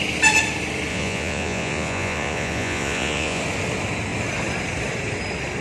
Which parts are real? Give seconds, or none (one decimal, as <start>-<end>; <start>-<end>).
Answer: 0.0-0.9; 3.4-5.6